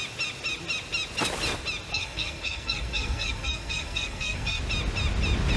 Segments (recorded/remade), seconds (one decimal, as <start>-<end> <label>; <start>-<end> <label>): 0.0-1.9 recorded; 1.9-4.6 remade; 4.6-5.6 recorded